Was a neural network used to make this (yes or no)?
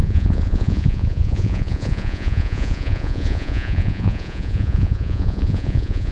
yes